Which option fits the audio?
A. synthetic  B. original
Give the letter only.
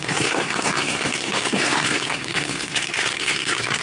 A